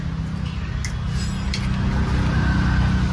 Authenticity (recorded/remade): recorded